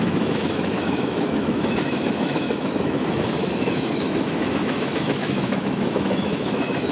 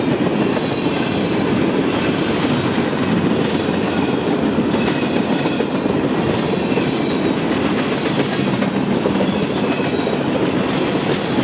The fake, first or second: first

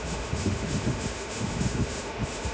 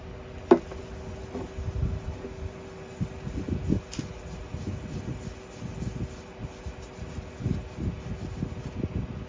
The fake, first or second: first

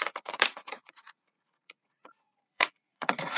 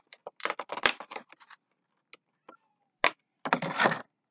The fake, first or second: first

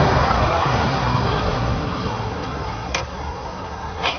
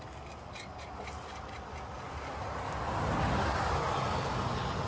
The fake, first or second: first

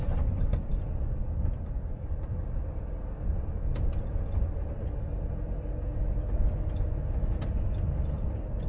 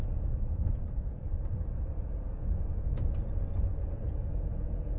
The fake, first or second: second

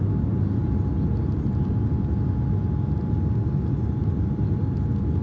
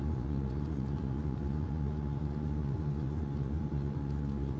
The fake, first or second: second